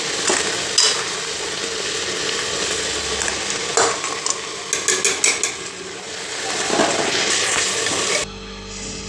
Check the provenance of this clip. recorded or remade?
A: recorded